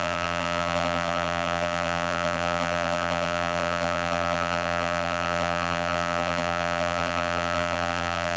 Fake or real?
fake